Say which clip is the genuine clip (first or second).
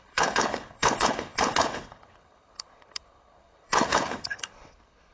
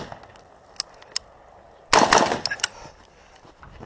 second